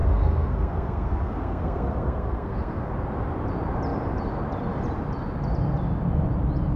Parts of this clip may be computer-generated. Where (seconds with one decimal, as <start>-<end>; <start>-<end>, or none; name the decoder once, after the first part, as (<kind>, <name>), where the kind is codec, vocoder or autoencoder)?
0.0-2.9 (codec, SNAC)